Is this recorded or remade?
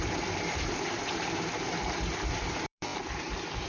remade